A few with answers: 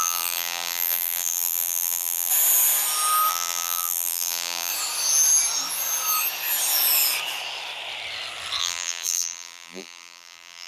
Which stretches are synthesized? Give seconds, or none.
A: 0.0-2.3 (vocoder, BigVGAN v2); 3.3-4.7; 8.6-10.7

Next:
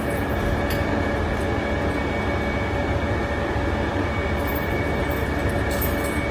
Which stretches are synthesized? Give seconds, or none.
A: 2.8-4.1 (vocoder, BigVGAN v2); 4.5-5.5

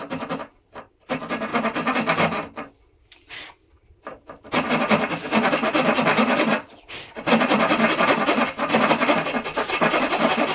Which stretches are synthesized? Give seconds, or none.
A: 6.5-9.7 (vocoder, BigVGAN v2)

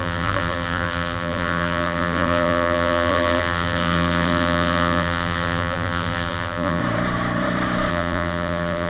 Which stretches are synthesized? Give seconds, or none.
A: 0.0-6.8 (vocoder, BigVGAN v2); 7.9-8.9

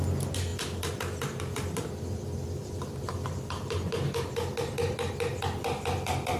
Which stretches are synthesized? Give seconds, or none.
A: none

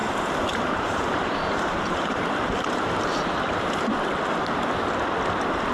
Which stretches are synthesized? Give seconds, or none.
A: 0.0-3.4 (vocoder, BigVGAN v2)